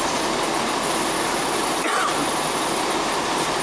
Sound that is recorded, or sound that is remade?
recorded